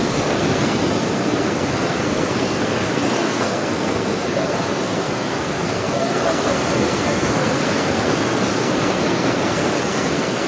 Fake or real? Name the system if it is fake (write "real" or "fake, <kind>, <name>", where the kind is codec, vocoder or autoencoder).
fake, codec, SNAC